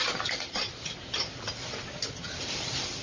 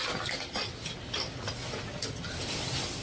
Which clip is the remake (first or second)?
first